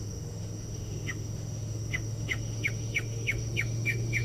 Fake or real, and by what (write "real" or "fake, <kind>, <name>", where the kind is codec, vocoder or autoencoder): fake, autoencoder, DAC-VAE